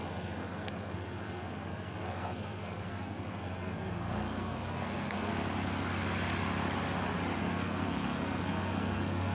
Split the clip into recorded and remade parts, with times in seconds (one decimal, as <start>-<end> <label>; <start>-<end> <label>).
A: 0.0-5.3 remade; 5.3-7.4 recorded; 7.4-9.3 remade